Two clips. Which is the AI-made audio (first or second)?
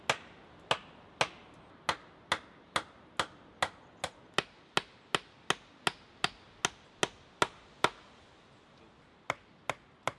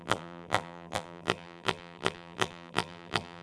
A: second